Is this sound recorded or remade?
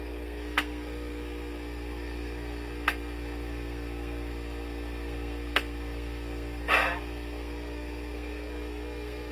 remade